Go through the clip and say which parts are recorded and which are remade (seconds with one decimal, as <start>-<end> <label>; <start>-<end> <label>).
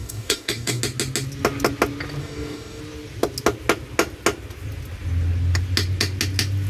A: 0.0-0.8 remade; 0.8-2.2 recorded; 2.2-2.8 remade; 2.8-6.7 recorded